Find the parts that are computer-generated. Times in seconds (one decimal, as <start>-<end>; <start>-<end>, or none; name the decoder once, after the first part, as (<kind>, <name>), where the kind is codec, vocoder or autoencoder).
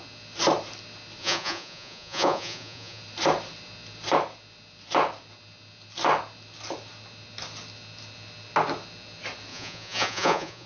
1.2-3.0 (vocoder, Vocos); 9.5-10.7